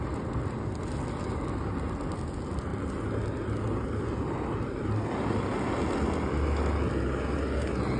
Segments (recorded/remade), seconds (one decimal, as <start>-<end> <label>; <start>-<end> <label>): 0.0-8.0 recorded